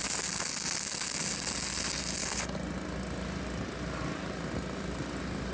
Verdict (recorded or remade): recorded